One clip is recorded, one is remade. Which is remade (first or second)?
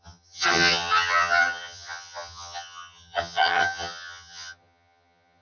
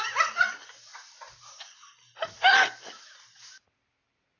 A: first